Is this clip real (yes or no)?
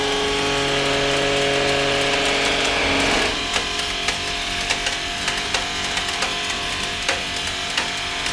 yes